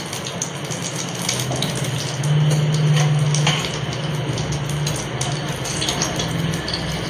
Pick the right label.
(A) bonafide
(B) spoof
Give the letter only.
A